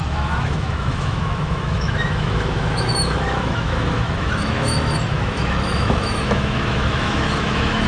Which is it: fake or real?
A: fake